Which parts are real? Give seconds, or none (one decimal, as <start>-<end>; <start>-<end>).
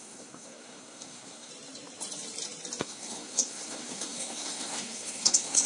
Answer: 1.5-2.8